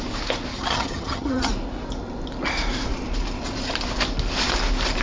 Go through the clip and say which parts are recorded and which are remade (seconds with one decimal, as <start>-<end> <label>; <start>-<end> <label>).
0.0-0.5 recorded; 0.5-1.5 remade; 1.5-5.0 recorded